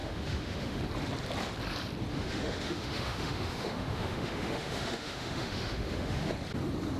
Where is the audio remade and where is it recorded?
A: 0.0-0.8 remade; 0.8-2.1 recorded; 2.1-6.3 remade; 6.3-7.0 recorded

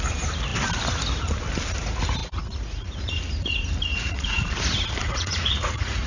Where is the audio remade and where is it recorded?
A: 0.0-2.2 recorded; 2.2-3.0 remade; 3.0-3.9 recorded; 3.9-4.5 remade; 4.5-5.0 recorded; 5.0-6.1 remade